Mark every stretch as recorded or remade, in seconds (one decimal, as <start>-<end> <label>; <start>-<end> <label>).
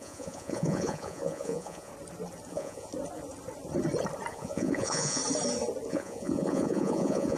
0.0-1.9 remade; 1.9-2.5 recorded; 2.5-2.9 remade; 2.9-4.3 recorded; 4.3-5.2 remade; 5.2-5.9 recorded; 5.9-7.4 remade